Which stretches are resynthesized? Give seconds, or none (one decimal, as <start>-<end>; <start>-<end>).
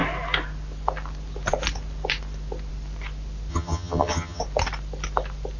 3.5-4.4